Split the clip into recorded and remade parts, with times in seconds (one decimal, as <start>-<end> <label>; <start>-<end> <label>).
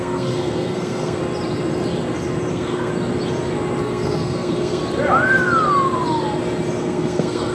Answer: 0.0-1.2 remade; 1.2-2.5 recorded; 2.5-2.9 remade; 2.9-3.8 recorded; 3.8-4.8 remade; 4.8-6.8 recorded; 6.8-7.5 remade